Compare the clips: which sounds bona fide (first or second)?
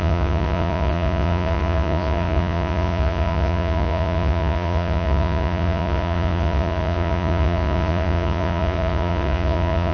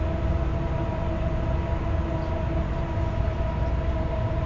second